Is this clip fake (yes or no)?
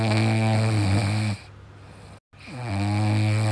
no